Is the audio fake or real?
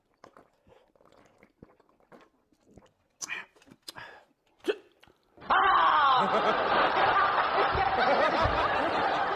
real